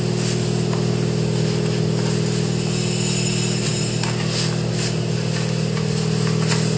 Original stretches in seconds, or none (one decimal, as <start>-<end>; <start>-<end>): 0.0-6.8